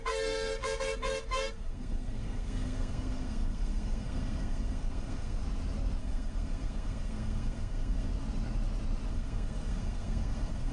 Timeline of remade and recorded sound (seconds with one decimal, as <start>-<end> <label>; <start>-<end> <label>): 0.0-5.4 remade; 5.4-6.0 recorded; 6.0-8.1 remade; 8.1-9.1 recorded; 9.1-10.7 remade